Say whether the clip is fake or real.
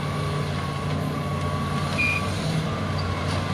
real